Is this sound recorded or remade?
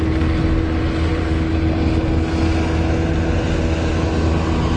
recorded